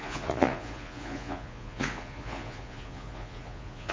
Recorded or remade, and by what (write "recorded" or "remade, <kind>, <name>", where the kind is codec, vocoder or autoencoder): remade, vocoder, Vocos